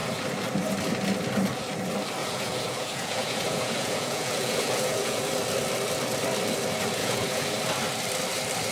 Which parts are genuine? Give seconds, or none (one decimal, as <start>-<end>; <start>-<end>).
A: 0.0-2.2; 5.2-7.0; 7.6-8.7